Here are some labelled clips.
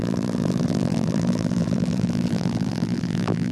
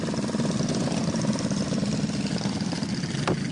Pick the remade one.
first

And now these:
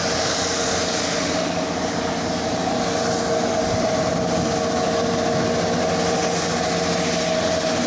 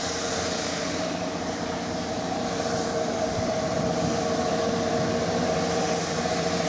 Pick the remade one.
second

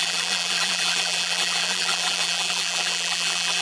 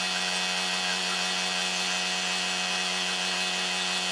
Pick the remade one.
first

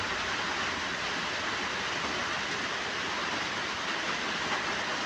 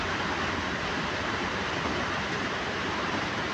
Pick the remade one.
second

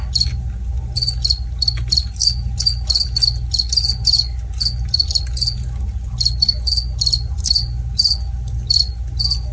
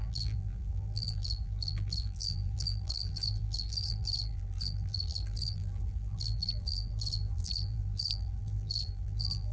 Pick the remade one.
second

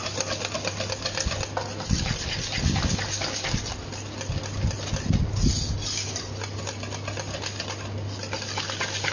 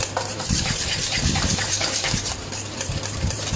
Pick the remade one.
second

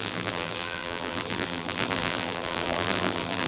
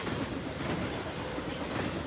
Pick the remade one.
first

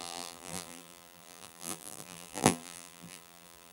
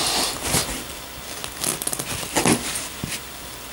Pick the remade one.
first